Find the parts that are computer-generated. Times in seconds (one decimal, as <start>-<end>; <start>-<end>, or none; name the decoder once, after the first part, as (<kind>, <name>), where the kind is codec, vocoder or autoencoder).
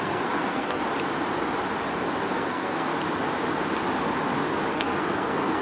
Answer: 0.0-0.8 (codec, SNAC); 2.3-2.9; 4.7-5.6